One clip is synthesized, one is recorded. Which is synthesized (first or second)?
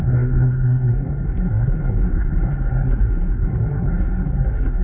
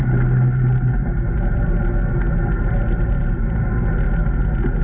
first